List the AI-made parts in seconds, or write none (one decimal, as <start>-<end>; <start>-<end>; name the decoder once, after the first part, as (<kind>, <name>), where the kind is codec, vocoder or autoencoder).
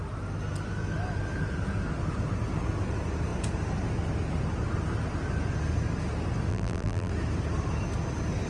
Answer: 6.5-7.1 (vocoder, BigVGAN v2)